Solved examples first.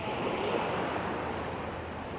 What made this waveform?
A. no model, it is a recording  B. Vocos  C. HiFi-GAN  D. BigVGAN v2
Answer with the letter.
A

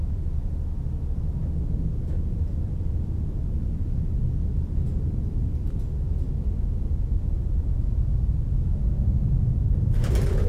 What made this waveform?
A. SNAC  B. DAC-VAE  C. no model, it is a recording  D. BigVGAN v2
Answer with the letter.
C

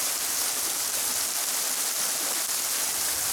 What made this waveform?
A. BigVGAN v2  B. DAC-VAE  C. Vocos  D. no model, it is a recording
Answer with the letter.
D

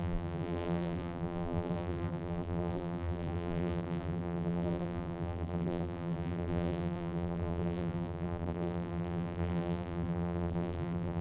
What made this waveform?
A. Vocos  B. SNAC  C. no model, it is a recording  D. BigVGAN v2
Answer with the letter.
D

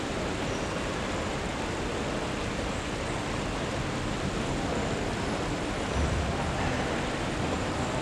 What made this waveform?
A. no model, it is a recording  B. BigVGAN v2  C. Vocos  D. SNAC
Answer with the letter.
A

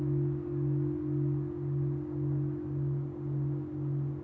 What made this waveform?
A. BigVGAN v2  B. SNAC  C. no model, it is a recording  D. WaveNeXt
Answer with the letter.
C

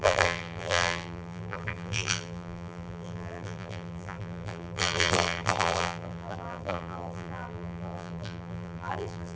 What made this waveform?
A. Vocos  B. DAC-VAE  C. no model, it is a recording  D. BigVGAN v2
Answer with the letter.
D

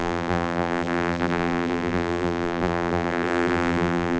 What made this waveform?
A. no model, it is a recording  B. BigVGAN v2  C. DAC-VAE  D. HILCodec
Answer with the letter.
B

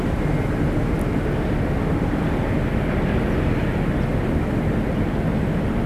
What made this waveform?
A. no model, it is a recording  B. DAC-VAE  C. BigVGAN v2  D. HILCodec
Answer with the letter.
A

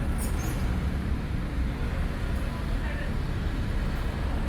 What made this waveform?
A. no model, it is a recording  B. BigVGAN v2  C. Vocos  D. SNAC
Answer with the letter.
A